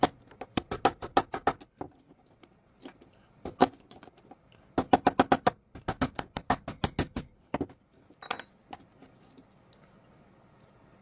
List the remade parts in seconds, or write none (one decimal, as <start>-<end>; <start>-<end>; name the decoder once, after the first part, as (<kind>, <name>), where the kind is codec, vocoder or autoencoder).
3.6-4.1 (vocoder, Vocos)